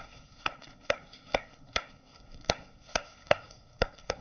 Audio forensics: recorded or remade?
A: remade